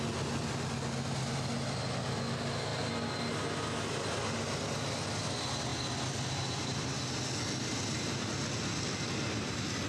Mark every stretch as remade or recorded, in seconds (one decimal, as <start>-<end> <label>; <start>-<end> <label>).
0.0-9.9 recorded